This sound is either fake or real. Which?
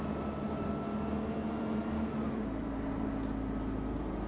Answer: real